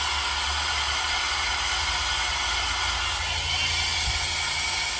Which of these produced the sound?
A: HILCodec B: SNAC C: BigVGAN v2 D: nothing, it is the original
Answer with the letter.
D